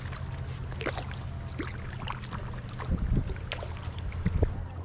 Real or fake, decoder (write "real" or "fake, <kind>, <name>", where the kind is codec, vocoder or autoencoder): real